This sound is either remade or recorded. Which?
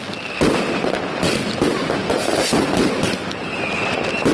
recorded